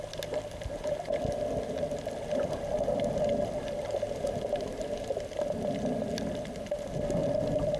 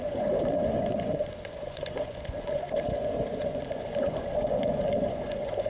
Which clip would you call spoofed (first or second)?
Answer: second